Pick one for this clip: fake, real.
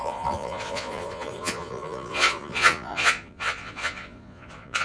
fake